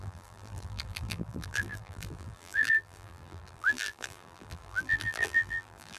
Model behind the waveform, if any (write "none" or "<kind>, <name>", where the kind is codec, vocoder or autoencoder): vocoder, BigVGAN v2